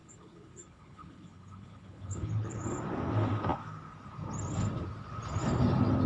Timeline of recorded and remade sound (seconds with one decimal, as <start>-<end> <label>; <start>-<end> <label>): 0.0-2.6 remade; 2.6-6.1 recorded